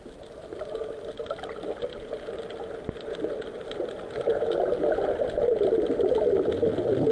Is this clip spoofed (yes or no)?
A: no